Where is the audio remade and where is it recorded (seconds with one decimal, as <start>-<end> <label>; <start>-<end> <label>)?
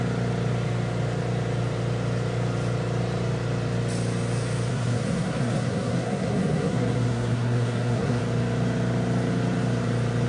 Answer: 0.0-4.7 recorded; 4.7-8.2 remade; 8.2-10.3 recorded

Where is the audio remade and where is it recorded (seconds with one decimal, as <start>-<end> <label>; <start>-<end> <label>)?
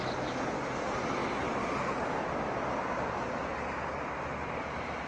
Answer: 0.0-5.1 recorded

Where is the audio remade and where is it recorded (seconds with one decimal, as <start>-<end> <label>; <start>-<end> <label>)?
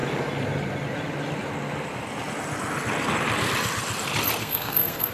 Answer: 0.0-4.4 recorded; 4.4-5.1 remade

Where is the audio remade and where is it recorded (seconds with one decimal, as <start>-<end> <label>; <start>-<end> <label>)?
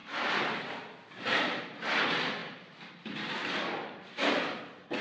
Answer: 0.0-1.6 remade; 1.6-2.4 recorded; 2.4-4.6 remade; 4.6-5.0 recorded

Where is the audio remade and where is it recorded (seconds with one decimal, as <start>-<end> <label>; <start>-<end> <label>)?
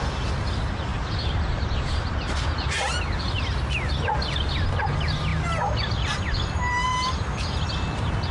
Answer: 0.0-0.9 recorded; 0.9-2.4 remade; 2.4-6.9 recorded; 6.9-7.7 remade; 7.7-8.3 recorded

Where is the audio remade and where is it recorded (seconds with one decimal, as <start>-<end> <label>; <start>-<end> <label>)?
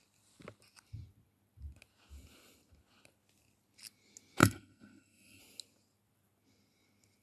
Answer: 0.0-4.4 recorded; 4.4-5.4 remade; 5.4-7.2 recorded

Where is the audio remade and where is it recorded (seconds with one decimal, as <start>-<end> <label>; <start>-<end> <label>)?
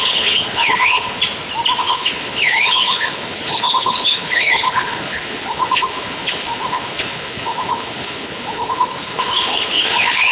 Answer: 0.0-1.2 remade; 1.2-1.8 recorded; 1.8-10.3 remade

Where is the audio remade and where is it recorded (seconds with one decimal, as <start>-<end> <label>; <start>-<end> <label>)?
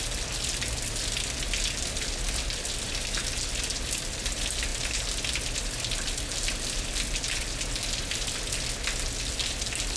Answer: 0.0-4.7 recorded; 4.7-5.3 remade; 5.3-10.0 recorded